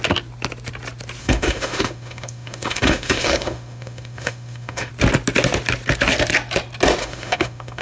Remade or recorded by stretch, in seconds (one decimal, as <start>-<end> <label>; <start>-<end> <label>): 0.0-1.2 recorded; 1.2-4.9 remade; 4.9-7.0 recorded; 7.0-7.8 remade